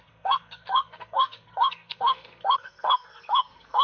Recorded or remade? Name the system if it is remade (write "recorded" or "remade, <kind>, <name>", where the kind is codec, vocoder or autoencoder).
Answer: remade, codec, SNAC